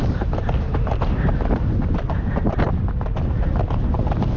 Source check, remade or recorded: recorded